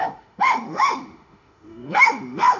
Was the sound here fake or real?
fake